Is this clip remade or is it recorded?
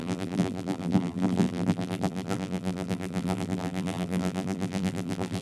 remade